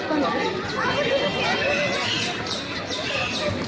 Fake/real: real